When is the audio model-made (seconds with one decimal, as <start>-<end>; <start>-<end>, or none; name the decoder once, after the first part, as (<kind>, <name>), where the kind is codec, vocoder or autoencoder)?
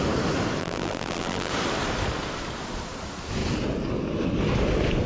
0.6-1.5 (vocoder, BigVGAN v2)